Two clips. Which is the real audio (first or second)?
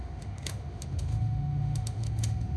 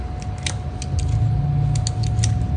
second